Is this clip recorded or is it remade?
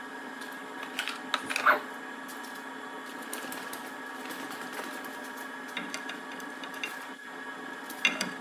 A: recorded